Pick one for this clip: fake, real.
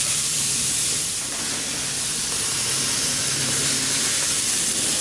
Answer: fake